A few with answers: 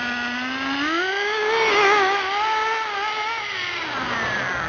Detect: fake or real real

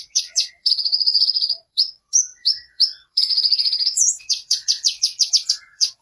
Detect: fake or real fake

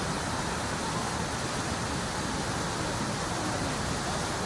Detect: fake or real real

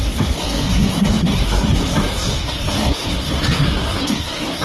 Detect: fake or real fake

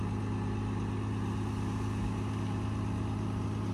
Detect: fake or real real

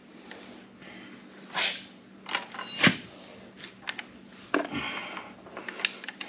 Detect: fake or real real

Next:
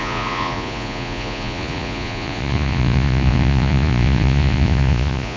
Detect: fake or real fake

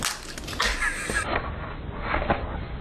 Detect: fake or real real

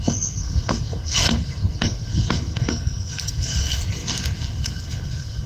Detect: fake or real fake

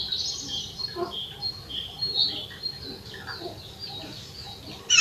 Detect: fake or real real